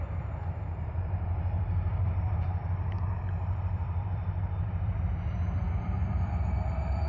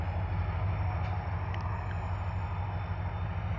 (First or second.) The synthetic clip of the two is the first